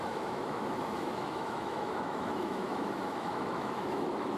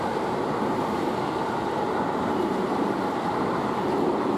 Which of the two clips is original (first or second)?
second